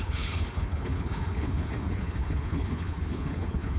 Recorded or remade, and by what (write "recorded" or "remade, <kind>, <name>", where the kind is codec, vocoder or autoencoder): remade, codec, HILCodec